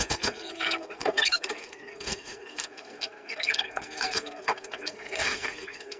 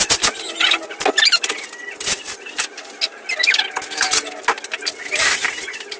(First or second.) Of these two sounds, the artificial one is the first